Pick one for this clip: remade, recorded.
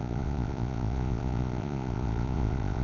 remade